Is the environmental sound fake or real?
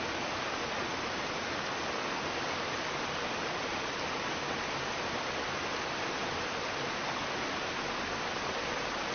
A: real